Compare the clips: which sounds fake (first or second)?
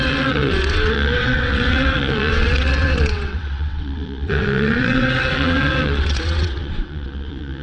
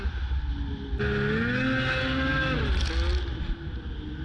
first